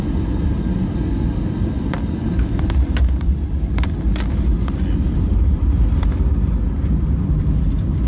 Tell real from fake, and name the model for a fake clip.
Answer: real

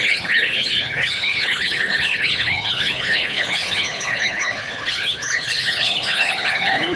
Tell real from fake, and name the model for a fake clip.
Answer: fake, codec, HILCodec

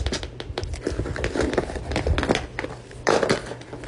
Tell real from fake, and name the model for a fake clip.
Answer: real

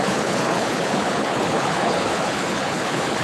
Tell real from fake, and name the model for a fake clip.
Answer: fake, codec, HILCodec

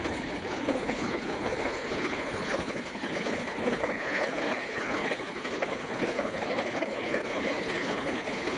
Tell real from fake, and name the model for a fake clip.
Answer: fake, codec, HILCodec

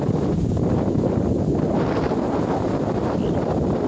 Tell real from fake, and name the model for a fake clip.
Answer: real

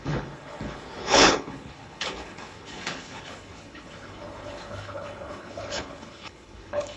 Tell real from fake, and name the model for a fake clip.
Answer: fake, codec, HILCodec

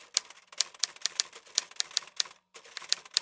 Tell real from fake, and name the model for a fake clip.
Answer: real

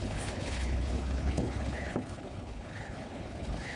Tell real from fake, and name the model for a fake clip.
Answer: fake, codec, HILCodec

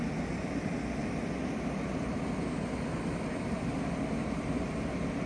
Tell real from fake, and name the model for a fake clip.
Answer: real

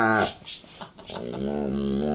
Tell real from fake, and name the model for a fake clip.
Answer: real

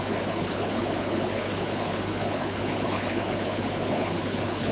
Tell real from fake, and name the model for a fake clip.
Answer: fake, codec, HILCodec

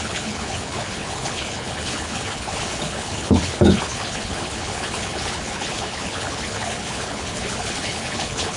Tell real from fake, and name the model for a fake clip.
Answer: fake, codec, HILCodec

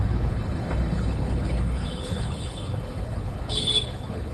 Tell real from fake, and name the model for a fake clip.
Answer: fake, codec, HILCodec